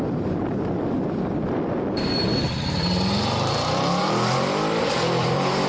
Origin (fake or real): fake